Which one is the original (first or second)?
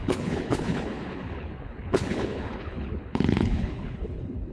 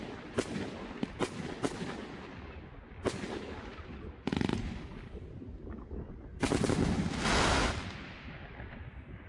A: second